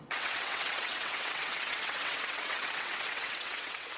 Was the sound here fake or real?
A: fake